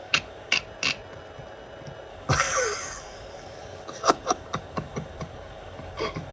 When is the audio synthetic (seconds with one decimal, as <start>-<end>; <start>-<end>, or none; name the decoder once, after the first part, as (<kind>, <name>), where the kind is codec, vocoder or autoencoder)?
0.0-0.6 (codec, DAC); 2.1-6.3